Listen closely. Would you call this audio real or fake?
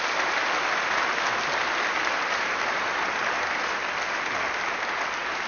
real